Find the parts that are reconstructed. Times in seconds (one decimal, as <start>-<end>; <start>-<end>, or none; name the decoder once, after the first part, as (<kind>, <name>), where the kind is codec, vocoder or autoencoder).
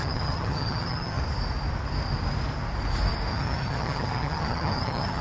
0.0-1.2 (vocoder, HiFi-GAN); 3.3-5.2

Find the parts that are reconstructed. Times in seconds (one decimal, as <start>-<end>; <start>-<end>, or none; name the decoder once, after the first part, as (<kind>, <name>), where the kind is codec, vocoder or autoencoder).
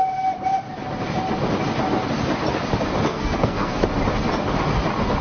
3.1-3.8 (codec, SNAC)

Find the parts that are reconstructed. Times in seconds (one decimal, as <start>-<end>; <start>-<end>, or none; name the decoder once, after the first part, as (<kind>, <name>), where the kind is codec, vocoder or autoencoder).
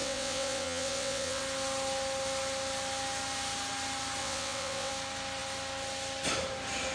0.0-1.4 (vocoder, WaveNeXt); 4.2-4.9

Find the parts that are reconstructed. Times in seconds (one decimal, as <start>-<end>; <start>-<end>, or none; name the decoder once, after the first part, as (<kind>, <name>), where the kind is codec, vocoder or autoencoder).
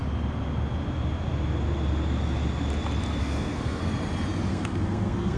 3.2-3.8 (codec, SNAC); 4.5-5.4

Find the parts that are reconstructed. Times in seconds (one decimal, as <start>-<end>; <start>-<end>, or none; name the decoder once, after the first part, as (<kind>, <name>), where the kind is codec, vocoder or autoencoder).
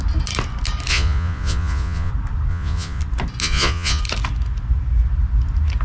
0.9-2.1 (vocoder, Vocos); 2.5-3.0; 3.4-4.0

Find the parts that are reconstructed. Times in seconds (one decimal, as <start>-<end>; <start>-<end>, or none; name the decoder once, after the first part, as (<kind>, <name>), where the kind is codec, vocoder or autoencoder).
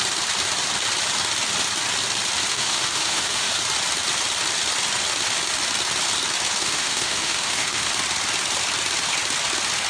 2.5-3.5 (autoencoder, DAC-VAE); 6.6-7.9